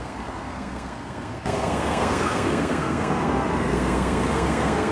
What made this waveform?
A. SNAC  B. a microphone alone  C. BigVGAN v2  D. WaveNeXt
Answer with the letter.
A